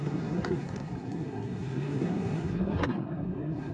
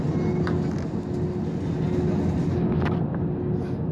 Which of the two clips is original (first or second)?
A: second